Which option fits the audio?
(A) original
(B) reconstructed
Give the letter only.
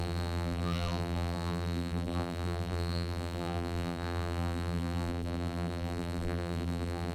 B